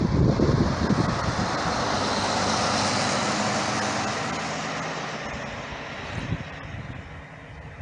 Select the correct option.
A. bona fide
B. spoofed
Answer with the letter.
A